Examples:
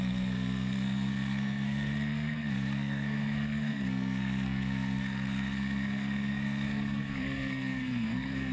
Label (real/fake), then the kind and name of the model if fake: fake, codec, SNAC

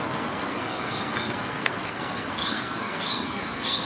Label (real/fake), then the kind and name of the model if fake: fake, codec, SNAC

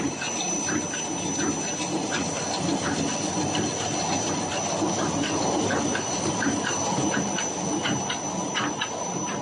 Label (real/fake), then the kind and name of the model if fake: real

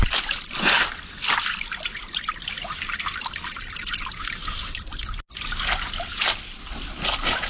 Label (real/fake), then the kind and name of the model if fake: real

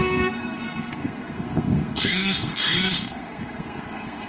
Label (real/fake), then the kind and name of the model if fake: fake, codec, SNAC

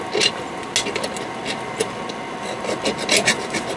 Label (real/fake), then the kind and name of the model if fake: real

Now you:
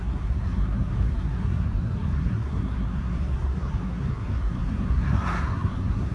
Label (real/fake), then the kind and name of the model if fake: fake, codec, SNAC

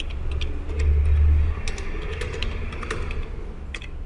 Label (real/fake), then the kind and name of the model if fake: real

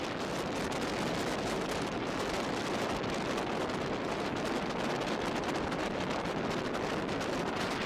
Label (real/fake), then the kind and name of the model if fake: real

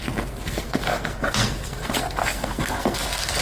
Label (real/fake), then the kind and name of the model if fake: fake, codec, SNAC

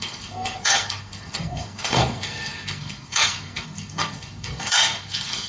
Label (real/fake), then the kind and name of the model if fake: fake, codec, SNAC